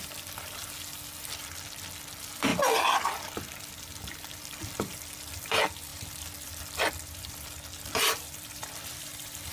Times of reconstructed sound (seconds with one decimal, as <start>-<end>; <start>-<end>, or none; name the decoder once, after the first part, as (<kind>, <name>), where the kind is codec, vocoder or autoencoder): 0.0-0.6 (vocoder, BigVGAN v2); 1.4-2.5; 4.4-9.5